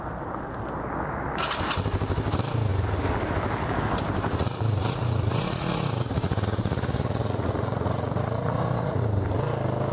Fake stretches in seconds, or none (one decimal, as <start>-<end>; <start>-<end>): 4.3-9.0